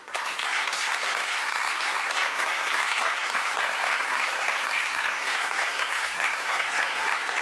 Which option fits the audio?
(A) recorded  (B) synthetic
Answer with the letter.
B